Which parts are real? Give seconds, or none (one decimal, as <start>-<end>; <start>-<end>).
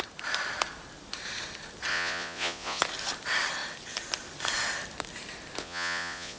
0.0-1.9; 2.8-5.6